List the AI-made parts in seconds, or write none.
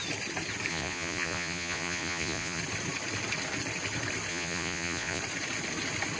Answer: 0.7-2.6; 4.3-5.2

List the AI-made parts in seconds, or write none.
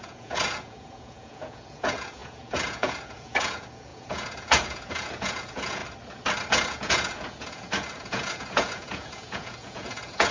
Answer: 0.0-5.8; 6.5-10.3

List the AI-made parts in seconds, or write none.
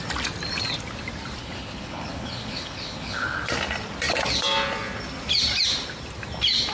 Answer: 1.4-3.4